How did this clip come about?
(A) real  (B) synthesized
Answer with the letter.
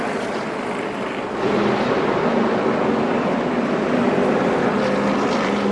B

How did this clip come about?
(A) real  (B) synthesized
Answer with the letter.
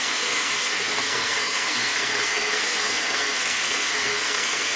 B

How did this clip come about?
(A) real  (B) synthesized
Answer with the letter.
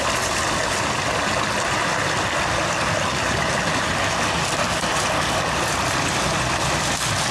A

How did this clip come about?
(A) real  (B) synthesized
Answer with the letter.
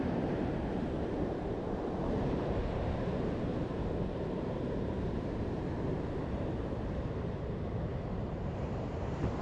B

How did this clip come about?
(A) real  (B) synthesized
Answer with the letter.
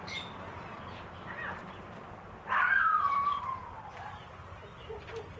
A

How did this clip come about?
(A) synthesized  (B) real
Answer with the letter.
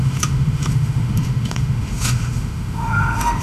A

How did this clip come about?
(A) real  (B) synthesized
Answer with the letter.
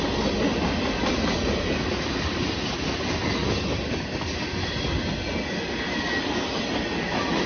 A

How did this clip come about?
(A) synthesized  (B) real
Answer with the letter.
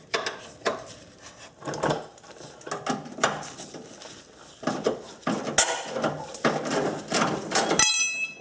B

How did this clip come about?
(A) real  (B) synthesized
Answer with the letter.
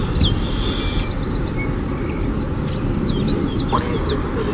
A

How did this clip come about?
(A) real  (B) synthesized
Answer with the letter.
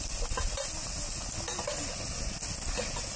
A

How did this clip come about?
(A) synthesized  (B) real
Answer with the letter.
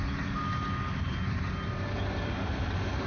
B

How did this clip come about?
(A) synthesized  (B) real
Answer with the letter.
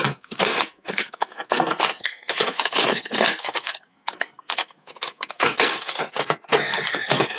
A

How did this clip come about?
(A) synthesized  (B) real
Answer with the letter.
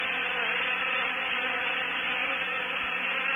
A